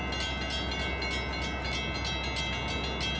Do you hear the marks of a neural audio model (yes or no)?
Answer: no